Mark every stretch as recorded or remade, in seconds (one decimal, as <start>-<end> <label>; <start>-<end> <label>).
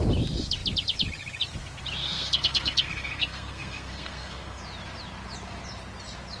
0.0-2.0 recorded; 2.0-4.6 remade; 4.6-6.4 recorded